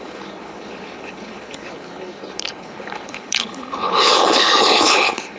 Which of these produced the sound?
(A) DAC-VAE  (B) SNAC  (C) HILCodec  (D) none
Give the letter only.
C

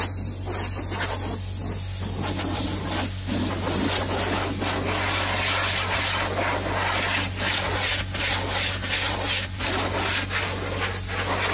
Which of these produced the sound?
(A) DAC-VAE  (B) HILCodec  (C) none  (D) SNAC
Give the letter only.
C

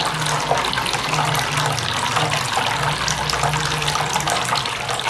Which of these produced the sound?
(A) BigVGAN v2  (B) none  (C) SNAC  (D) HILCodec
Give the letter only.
B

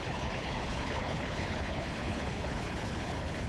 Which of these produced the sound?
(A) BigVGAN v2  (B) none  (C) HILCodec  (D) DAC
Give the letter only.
C